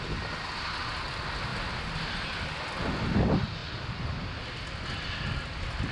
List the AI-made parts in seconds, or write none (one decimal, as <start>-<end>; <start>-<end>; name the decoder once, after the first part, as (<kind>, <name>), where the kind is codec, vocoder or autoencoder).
none